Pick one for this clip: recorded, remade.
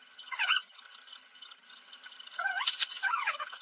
remade